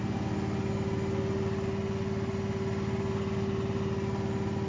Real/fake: real